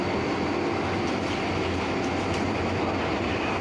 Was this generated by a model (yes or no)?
no